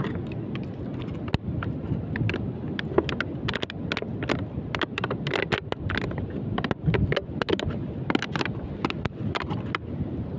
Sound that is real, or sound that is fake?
real